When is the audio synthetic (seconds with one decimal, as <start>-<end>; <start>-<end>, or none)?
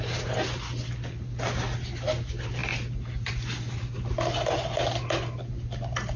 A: none